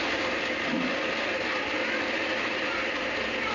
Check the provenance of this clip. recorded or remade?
recorded